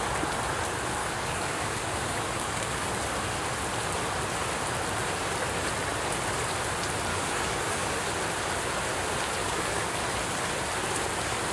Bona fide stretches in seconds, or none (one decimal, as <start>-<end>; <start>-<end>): 0.0-1.0; 2.9-7.1; 7.9-9.4; 10.0-11.5